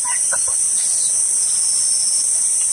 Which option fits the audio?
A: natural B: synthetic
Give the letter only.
A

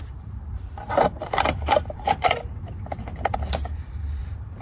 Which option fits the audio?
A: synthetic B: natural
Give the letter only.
A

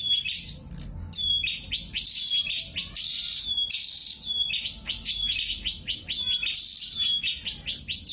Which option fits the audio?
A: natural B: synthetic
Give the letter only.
A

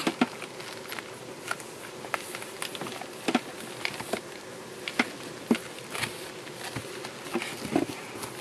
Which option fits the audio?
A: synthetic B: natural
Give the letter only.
B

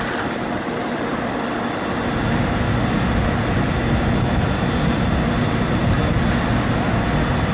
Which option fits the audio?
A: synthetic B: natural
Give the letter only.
B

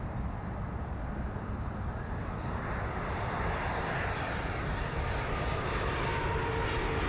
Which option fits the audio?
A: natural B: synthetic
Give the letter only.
A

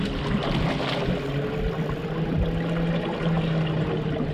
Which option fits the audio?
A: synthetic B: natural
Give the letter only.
B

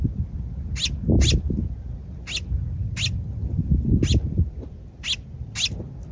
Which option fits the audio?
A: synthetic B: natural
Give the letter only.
B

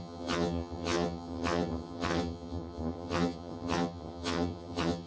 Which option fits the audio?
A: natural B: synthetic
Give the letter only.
B